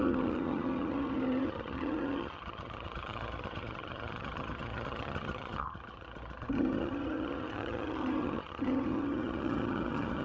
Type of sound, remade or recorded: remade